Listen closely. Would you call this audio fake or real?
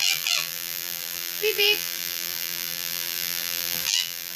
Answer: fake